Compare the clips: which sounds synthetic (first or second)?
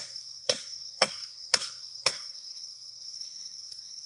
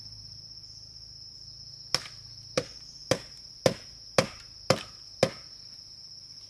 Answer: first